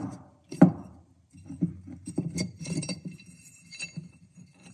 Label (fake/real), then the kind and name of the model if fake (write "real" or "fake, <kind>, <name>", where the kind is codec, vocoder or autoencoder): fake, vocoder, BigVGAN v2